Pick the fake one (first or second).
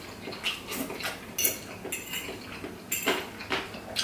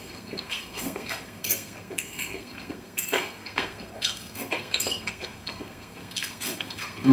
second